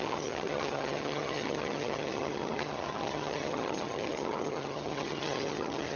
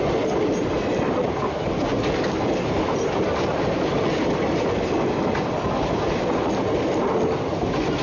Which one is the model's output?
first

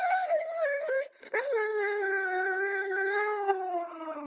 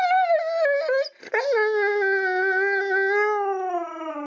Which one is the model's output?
first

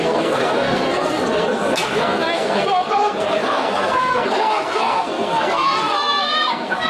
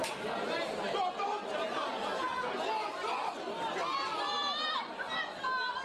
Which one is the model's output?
first